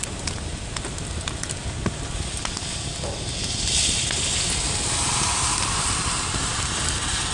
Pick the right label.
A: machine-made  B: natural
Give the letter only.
B